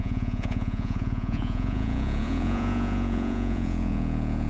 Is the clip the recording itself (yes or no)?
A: no